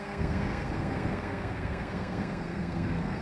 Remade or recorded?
remade